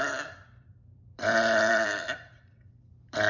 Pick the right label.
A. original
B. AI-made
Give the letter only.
B